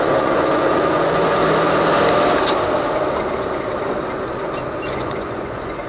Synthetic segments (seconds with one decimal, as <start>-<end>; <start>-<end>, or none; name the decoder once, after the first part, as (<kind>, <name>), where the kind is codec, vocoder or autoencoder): 0.0-1.4 (vocoder, Vocos); 4.9-5.9

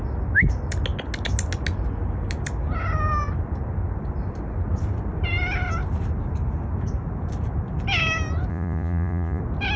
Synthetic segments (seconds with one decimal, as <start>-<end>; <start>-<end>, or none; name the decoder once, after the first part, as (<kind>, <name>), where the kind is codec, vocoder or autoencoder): 8.5-9.4 (vocoder, Vocos)

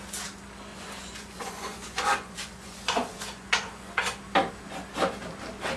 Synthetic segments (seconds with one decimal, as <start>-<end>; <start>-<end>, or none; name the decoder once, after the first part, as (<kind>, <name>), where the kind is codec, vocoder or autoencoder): 0.7-4.2 (vocoder, Vocos)

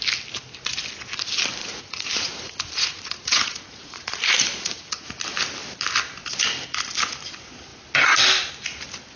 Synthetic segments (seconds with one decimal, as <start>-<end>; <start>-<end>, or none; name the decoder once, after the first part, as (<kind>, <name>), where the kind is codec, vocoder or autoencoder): 1.6-5.1 (vocoder, Vocos)